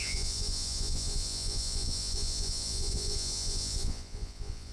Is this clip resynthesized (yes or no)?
yes